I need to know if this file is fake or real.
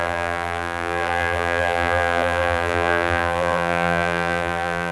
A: fake